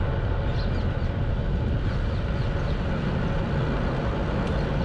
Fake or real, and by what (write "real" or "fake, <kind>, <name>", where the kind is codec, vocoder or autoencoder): real